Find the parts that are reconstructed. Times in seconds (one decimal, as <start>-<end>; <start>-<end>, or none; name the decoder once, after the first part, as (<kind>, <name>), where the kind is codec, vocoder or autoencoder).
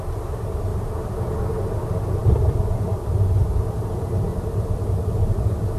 0.7-1.2 (vocoder, BigVGAN v2); 2.2-4.9